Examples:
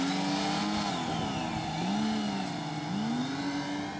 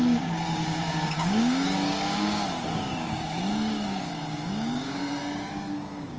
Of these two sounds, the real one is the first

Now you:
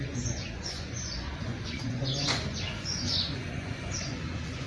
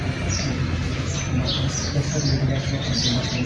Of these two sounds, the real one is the second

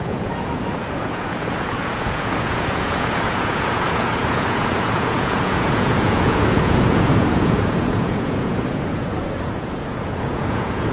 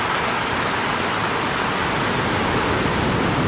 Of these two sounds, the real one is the second